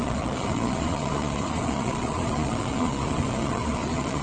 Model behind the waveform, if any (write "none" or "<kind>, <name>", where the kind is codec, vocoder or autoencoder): vocoder, Vocos